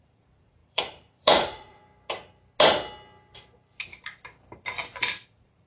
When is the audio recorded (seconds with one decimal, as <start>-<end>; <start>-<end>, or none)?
1.8-5.2